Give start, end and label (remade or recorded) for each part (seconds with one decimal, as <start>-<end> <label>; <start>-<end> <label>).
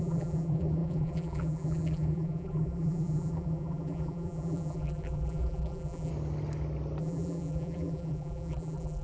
0.0-6.1 remade; 6.1-7.0 recorded; 7.0-9.0 remade